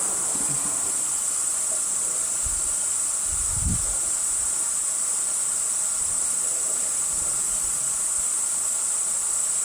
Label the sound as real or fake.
real